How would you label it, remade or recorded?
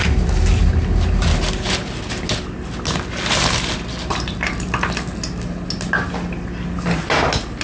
recorded